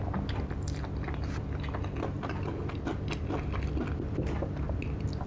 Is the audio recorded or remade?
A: recorded